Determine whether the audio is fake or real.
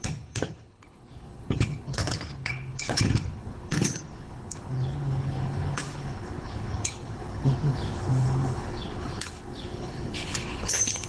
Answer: fake